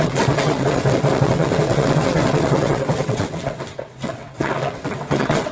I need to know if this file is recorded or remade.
remade